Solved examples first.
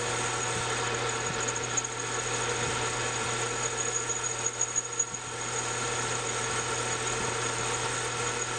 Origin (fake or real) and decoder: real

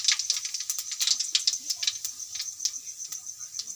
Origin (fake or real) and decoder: real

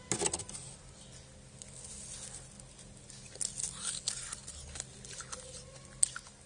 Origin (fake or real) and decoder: real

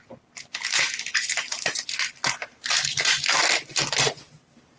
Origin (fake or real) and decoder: real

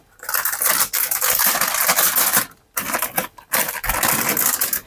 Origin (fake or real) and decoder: real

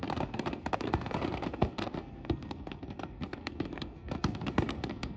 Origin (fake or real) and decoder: fake, codec, SNAC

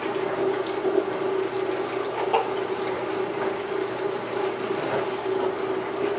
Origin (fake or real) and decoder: real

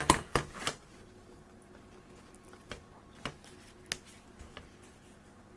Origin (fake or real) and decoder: real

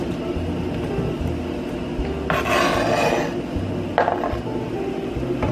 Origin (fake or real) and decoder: real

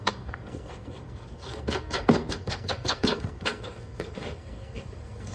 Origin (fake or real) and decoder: fake, codec, SNAC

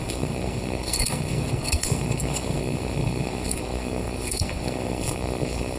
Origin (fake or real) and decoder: fake, codec, SNAC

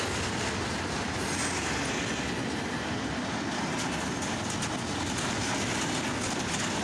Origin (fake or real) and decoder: real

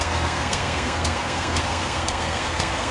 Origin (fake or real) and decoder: fake, codec, SNAC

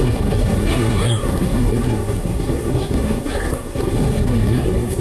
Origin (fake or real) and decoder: fake, codec, SNAC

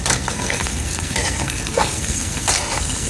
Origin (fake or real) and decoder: fake, codec, SNAC